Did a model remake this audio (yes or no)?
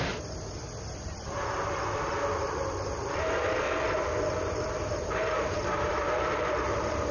yes